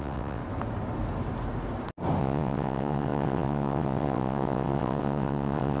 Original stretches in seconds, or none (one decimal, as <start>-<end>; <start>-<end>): 0.4-2.2